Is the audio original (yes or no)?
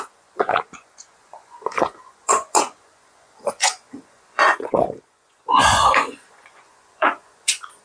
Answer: no